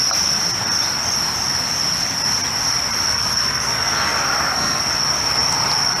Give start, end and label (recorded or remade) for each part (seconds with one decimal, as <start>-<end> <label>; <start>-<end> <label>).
0.0-3.1 recorded; 3.1-4.9 remade; 4.9-6.0 recorded